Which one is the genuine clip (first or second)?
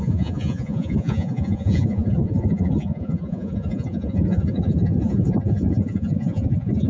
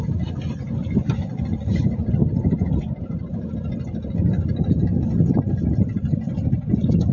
second